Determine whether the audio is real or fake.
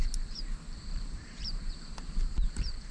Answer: fake